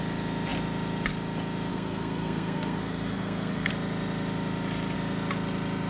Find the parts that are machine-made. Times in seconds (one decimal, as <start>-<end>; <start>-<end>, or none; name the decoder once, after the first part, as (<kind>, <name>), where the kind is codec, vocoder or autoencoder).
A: 1.7-3.7 (codec, SNAC)